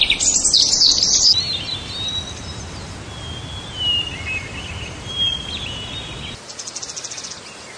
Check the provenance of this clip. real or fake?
real